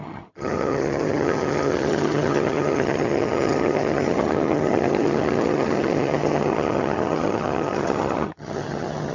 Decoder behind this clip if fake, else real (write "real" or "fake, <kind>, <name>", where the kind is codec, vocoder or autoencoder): fake, vocoder, HiFi-GAN